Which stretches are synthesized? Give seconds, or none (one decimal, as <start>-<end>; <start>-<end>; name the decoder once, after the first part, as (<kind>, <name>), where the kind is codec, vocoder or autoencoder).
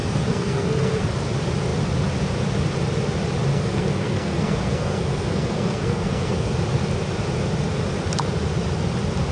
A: 0.0-1.1 (codec, SNAC); 3.5-6.5